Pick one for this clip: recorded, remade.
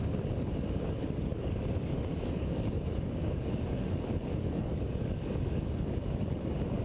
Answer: remade